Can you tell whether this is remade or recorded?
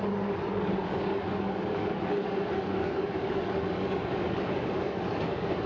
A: remade